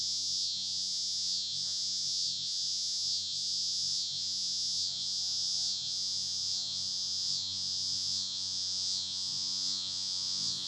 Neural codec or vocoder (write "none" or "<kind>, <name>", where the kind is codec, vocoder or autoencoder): vocoder, Vocos